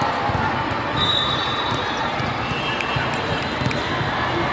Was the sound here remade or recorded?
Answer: recorded